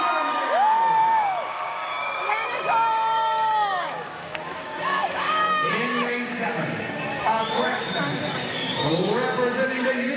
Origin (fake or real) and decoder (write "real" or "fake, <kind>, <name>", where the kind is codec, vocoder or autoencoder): fake, codec, DAC